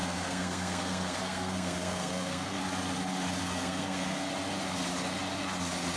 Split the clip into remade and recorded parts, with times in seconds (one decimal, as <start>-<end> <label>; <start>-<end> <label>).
0.0-2.6 remade; 2.6-3.4 recorded; 3.4-4.3 remade; 4.3-6.0 recorded